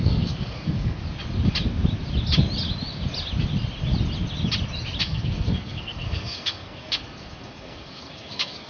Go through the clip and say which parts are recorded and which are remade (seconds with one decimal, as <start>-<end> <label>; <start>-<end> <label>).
0.0-1.0 remade; 1.0-5.0 recorded; 5.0-8.7 remade